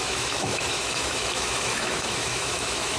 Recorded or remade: remade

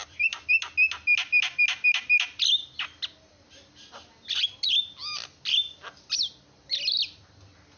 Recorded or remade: recorded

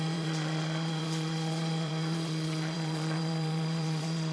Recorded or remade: remade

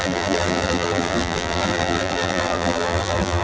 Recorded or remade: remade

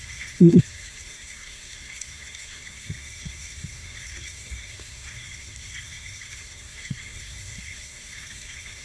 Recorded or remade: remade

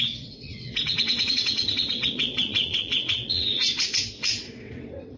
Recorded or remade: remade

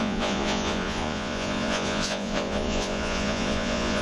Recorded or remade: remade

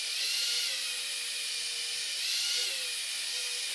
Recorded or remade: recorded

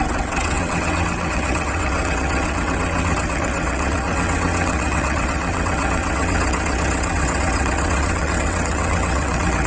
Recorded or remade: remade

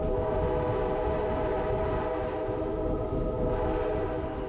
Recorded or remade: recorded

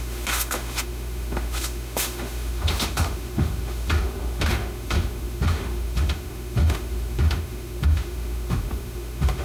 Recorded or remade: remade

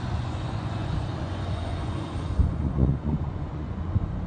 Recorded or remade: remade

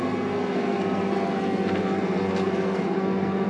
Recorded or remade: remade